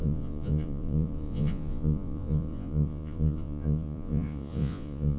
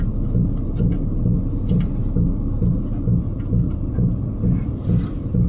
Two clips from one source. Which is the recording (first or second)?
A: second